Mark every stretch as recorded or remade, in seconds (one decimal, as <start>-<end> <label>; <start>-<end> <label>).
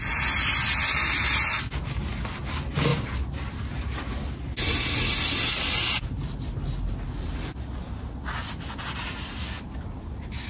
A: 0.0-10.5 recorded